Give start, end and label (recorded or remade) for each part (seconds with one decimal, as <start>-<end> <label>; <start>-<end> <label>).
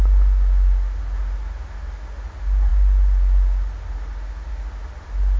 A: 0.0-5.4 recorded